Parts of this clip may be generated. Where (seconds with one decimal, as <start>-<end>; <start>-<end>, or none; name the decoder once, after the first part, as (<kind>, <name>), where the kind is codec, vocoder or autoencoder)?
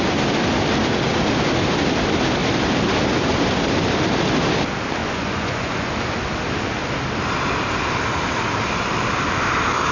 5.0-5.9 (vocoder, Vocos)